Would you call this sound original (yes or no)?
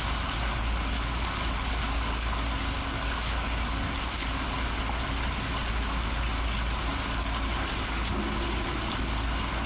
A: yes